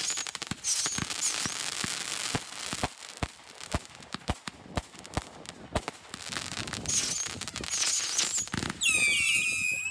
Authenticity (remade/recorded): recorded